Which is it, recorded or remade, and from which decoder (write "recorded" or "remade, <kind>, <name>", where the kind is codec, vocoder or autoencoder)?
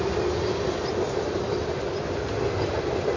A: recorded